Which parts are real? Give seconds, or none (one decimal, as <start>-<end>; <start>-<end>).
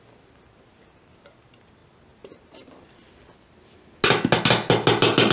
0.0-5.3